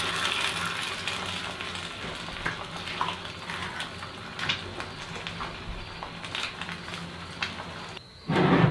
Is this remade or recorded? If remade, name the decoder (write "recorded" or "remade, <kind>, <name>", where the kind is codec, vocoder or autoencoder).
recorded